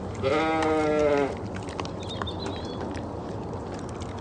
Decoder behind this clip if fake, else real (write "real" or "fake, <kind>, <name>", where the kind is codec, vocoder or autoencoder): real